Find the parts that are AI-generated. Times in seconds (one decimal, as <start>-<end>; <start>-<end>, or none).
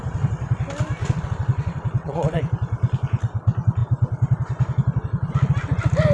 1.0-2.4